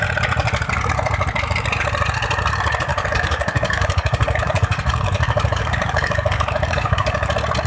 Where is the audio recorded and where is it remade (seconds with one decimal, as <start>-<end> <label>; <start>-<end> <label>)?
0.0-2.9 recorded; 2.9-7.3 remade; 7.3-7.7 recorded